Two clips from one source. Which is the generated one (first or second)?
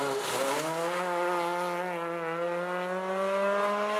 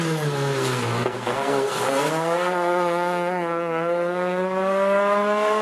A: second